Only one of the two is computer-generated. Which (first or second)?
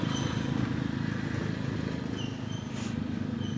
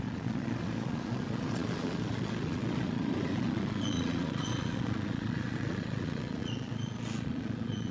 second